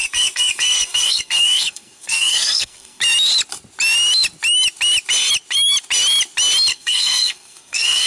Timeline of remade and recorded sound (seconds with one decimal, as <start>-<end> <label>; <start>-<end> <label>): 0.0-3.0 remade; 3.0-6.7 recorded; 6.7-8.1 remade